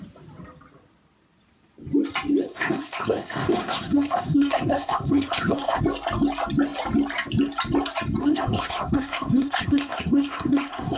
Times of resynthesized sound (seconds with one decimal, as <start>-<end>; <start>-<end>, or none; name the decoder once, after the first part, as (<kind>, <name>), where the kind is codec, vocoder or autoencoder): 2.4-5.8 (codec, SNAC); 8.2-11.0

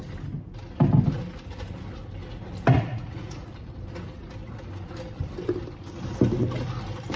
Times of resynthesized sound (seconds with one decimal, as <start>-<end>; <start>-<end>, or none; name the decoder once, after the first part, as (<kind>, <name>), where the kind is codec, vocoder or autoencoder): 2.9-3.5 (vocoder, Vocos)

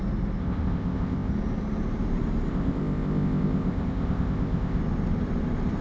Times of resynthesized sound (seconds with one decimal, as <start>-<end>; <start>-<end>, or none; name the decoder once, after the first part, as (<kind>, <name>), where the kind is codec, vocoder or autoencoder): 0.4-1.3 (codec, ZipCodec); 2.5-4.8

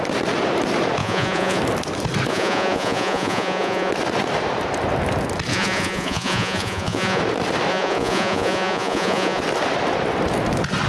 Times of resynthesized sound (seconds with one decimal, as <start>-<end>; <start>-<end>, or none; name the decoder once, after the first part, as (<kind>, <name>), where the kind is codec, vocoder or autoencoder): 1.0-1.6 (vocoder, Vocos); 2.3-3.9; 5.5-7.2; 7.7-9.4

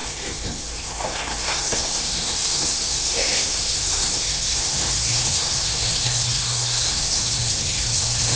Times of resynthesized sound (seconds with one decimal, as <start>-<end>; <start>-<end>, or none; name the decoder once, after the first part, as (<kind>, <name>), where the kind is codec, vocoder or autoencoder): 0.0-8.4 (codec, SNAC)

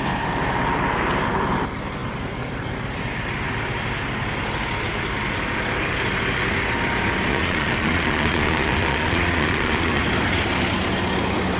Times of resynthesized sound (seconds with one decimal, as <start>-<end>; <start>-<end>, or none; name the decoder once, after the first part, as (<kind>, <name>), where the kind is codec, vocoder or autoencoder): 7.3-10.0 (vocoder, Vocos)

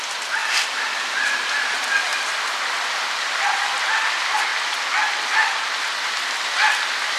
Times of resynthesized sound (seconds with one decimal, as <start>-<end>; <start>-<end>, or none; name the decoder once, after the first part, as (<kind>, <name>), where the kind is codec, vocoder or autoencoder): 0.0-4.5 (vocoder, BigVGAN v2)

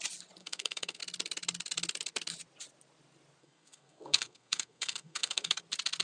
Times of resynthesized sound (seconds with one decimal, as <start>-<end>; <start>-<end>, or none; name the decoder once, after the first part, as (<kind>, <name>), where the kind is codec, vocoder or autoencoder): 0.4-1.0 (codec, SNAC); 3.4-5.6